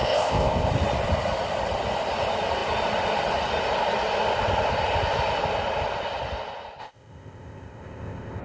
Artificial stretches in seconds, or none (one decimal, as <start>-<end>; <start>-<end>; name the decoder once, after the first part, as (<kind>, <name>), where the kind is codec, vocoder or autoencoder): 0.0-0.7 (codec, ZipCodec); 6.8-8.4